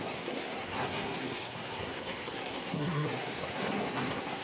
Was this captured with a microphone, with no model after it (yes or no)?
no